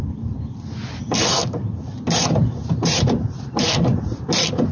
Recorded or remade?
remade